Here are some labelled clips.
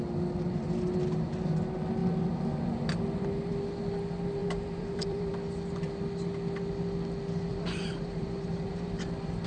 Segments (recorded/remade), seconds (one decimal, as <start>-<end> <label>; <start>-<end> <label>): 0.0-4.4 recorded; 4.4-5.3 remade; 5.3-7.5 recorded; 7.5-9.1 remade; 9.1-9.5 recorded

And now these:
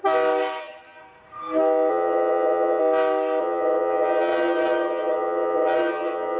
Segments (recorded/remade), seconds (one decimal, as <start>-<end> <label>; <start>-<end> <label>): 0.0-0.6 recorded; 0.6-1.0 remade; 1.0-1.9 recorded; 1.9-2.8 remade; 2.8-3.4 recorded; 3.4-6.4 remade

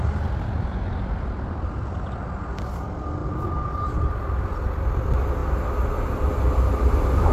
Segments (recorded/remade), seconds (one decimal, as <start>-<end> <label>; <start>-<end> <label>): 0.0-3.2 recorded; 3.2-3.9 remade; 3.9-7.3 recorded